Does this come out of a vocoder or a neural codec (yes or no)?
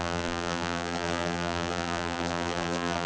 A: yes